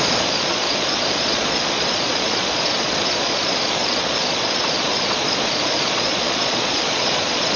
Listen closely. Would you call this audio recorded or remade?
remade